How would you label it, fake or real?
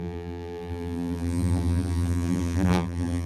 fake